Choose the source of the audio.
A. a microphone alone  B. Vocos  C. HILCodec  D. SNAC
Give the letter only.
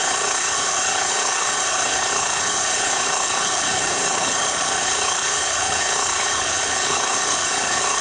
C